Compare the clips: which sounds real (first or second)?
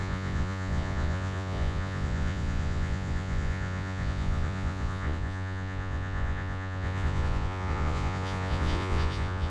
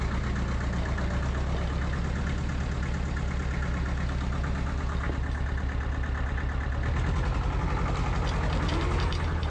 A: second